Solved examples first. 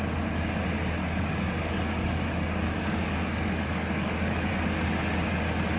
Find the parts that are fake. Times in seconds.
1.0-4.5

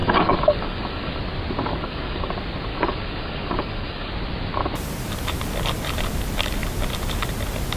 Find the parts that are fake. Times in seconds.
0.0-1.2; 1.7-2.3; 2.7-4.1

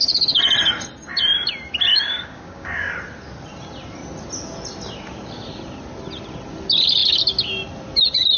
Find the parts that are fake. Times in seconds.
1.9-2.9

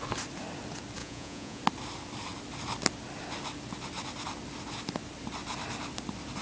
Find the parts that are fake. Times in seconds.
1.0-1.6

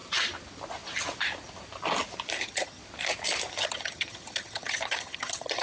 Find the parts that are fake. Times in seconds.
2.4-2.8; 3.5-5.6

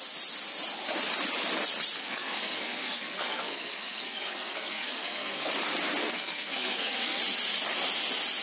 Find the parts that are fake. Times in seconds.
2.0-5.5; 6.0-7.2

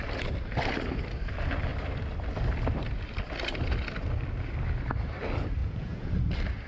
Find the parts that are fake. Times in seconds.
5.6-6.1